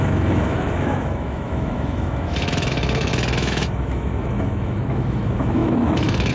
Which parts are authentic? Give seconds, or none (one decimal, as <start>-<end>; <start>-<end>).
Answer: none